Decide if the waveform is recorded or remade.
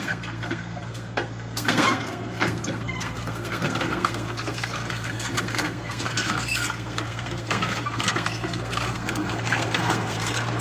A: remade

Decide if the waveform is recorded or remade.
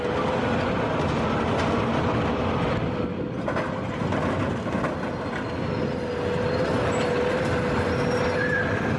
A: recorded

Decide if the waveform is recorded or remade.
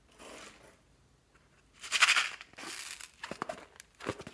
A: recorded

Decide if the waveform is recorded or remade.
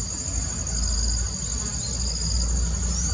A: recorded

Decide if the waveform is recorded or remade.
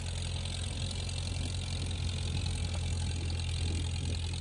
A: recorded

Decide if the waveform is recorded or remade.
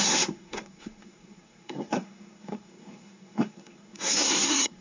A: remade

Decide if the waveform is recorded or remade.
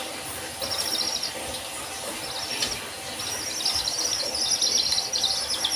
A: recorded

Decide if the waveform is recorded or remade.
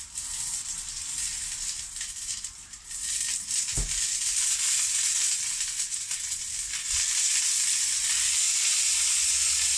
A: recorded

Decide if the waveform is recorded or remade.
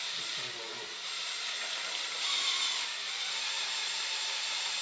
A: recorded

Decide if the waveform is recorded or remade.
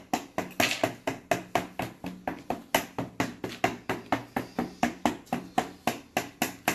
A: recorded